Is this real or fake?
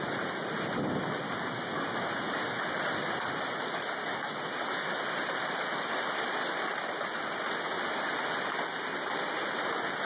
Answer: real